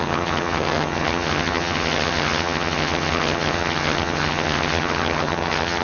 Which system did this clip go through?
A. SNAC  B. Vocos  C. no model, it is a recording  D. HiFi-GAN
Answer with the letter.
D